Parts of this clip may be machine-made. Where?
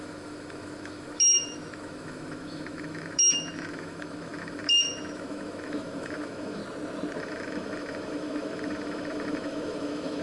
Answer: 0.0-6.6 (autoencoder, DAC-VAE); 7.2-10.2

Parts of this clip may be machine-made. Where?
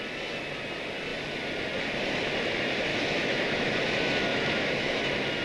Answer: 2.9-3.7 (autoencoder, DAC-VAE); 4.3-5.0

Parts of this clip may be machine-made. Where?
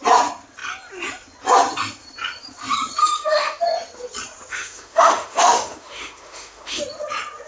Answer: 3.0-3.6 (autoencoder, DAC-VAE); 4.5-6.8